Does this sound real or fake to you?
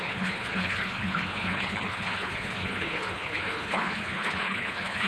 fake